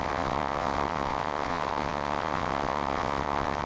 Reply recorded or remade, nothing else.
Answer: remade